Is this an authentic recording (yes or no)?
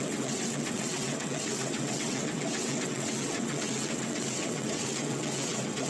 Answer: no